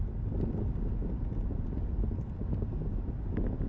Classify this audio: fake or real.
real